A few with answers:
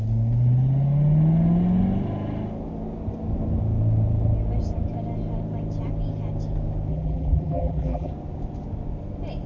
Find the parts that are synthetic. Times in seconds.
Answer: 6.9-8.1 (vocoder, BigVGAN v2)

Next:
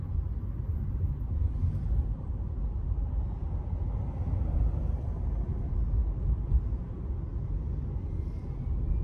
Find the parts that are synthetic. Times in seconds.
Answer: none

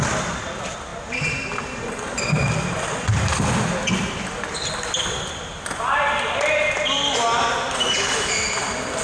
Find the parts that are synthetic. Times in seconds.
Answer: none

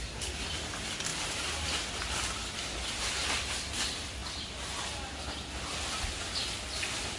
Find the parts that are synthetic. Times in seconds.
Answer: 1.1-1.8 (vocoder, BigVGAN v2)

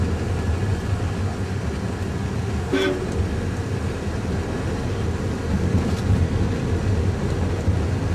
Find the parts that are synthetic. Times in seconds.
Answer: none

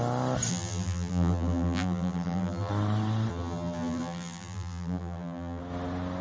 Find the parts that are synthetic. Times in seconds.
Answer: 0.5-2.7 (vocoder, BigVGAN v2); 3.3-5.6

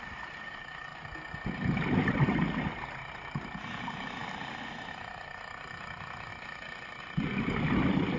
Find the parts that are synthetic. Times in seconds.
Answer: 0.0-0.9 (vocoder, BigVGAN v2); 3.8-4.2; 4.9-8.2

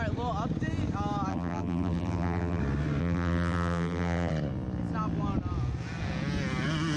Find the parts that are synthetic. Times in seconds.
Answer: 1.3-2.6 (vocoder, BigVGAN v2); 3.0-4.3